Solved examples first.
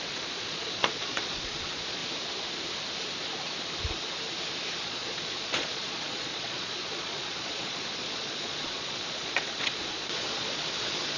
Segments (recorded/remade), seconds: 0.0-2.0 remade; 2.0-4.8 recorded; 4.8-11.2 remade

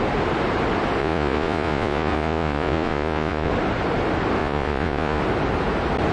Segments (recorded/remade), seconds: 0.0-1.0 recorded; 1.0-3.5 remade; 3.5-4.4 recorded; 4.4-5.2 remade; 5.2-6.1 recorded